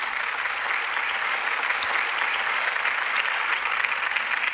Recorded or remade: recorded